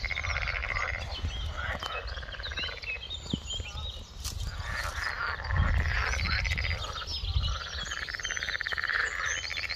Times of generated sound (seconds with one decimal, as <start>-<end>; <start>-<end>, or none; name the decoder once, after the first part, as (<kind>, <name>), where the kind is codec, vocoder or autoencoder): none